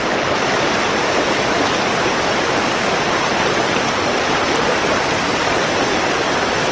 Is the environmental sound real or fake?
real